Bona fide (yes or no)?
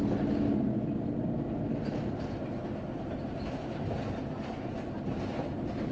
yes